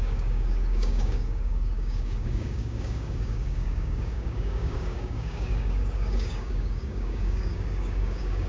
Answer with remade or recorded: remade